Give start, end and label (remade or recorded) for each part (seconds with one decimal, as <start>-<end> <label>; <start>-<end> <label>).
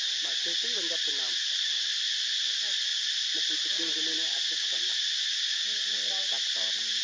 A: 0.0-7.0 recorded